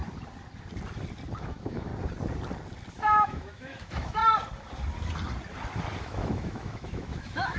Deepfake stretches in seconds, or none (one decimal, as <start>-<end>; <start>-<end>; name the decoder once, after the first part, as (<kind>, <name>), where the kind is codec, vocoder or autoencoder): 1.4-1.9 (autoencoder, DAC-VAE); 2.9-4.2; 6.0-7.6